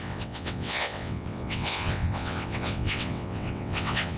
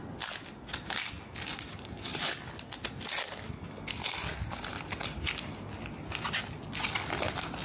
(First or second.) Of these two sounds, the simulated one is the first